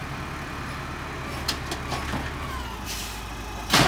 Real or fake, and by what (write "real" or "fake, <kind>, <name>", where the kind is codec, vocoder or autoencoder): real